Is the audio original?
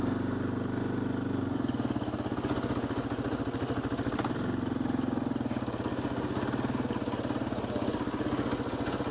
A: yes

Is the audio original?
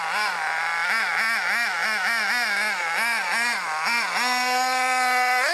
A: yes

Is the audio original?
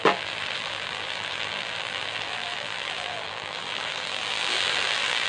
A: no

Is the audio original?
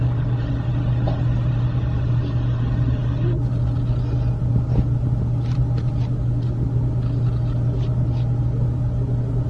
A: yes